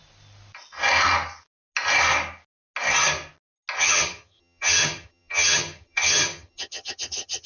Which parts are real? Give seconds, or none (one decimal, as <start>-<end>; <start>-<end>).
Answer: 0.0-3.8